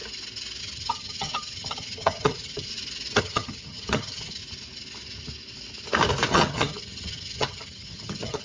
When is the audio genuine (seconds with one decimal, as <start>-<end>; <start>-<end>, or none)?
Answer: 0.0-0.6; 2.7-3.2; 4.4-6.3